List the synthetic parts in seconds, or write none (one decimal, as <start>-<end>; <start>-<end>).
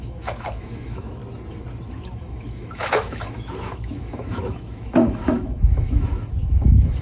0.0-1.2; 1.9-7.0